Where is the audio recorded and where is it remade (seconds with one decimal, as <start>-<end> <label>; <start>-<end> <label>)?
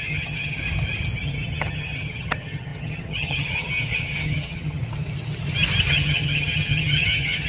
0.0-0.6 remade; 0.6-1.2 recorded; 1.2-4.8 remade; 4.8-5.9 recorded; 5.9-7.5 remade